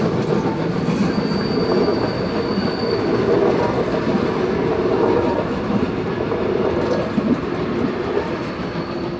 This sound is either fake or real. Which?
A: real